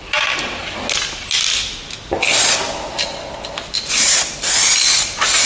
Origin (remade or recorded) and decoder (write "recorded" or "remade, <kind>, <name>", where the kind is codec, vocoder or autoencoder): recorded